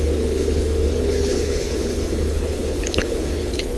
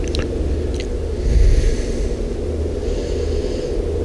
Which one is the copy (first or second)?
first